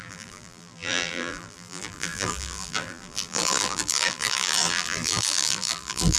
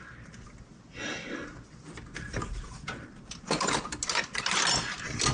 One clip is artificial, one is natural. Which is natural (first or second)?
second